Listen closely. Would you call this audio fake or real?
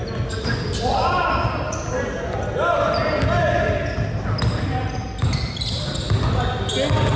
real